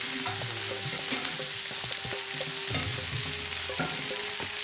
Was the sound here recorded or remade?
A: recorded